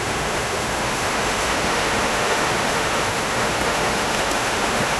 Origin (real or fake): fake